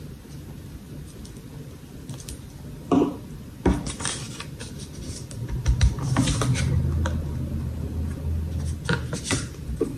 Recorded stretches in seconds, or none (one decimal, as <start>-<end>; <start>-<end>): 0.0-4.6; 6.7-10.0